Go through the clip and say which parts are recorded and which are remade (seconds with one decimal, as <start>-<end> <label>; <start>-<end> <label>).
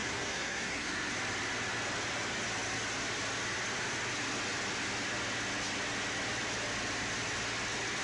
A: 0.0-1.1 remade; 1.1-8.0 recorded